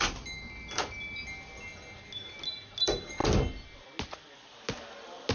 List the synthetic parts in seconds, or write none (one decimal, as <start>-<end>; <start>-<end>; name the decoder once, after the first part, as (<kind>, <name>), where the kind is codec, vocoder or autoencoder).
none

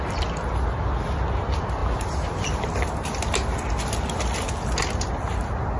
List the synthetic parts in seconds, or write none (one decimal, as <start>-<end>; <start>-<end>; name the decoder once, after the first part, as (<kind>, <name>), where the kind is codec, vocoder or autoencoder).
none

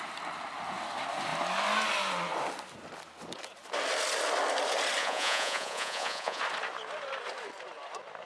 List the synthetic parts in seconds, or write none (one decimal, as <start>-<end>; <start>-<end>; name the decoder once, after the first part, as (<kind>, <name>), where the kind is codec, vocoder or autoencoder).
5.0-6.4 (vocoder, Vocos)

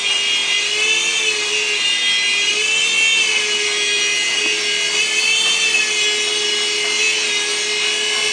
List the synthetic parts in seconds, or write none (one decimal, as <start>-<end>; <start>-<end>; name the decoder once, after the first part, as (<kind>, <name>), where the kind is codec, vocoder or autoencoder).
none

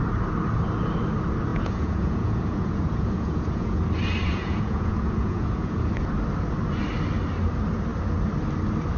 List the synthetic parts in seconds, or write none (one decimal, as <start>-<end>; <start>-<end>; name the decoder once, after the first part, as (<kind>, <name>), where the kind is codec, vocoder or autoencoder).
1.5-3.8 (vocoder, Vocos); 4.3-5.9